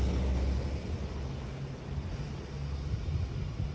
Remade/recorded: recorded